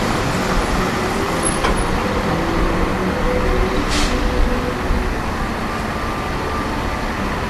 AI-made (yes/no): no